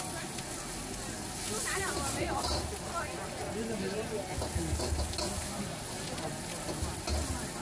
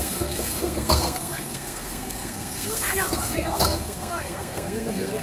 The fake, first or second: second